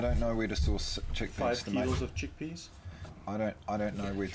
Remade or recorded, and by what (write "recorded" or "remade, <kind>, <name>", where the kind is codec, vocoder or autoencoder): recorded